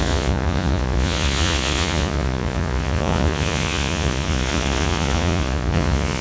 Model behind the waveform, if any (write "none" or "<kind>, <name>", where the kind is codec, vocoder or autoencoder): vocoder, Vocos